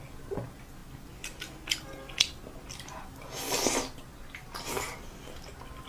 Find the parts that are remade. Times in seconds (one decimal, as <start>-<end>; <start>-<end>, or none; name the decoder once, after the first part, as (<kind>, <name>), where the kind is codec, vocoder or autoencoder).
none